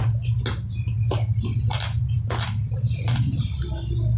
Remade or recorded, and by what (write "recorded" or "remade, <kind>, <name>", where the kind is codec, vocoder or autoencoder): recorded